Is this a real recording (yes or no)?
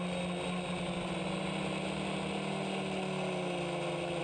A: yes